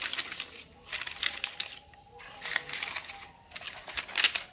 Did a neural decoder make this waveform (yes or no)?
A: no